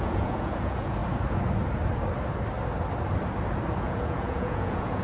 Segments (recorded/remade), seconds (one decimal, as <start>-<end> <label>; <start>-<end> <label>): 0.0-1.0 remade; 1.0-3.8 recorded; 3.8-5.0 remade